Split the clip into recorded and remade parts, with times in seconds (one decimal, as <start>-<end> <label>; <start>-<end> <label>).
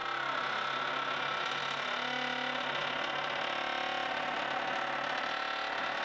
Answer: 0.0-6.0 recorded